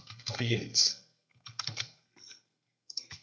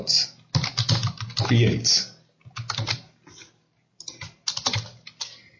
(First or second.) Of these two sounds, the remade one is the first